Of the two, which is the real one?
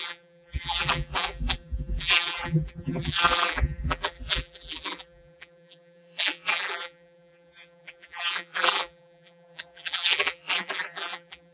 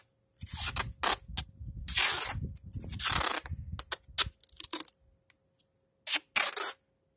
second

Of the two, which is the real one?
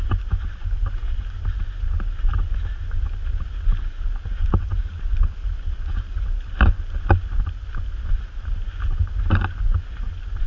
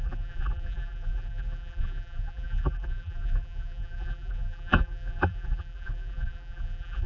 first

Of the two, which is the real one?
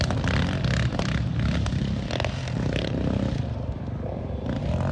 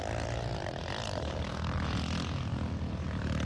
first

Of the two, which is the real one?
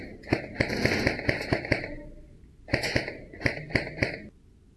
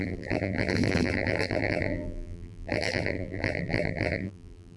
first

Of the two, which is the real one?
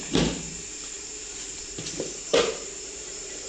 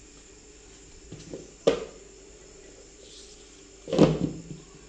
second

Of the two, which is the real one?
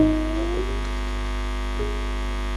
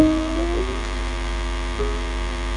first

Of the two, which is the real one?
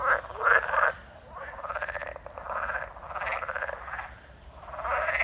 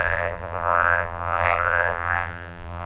first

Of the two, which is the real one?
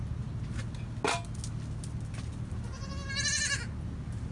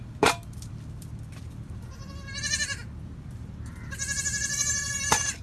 first